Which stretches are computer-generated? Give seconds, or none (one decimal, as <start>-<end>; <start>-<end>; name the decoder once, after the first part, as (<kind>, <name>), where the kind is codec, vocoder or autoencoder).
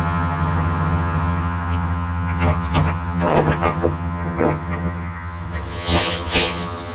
0.0-6.9 (vocoder, HiFi-GAN)